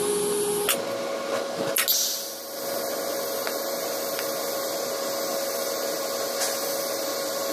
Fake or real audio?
real